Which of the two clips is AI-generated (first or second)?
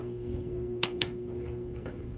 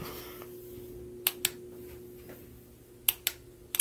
first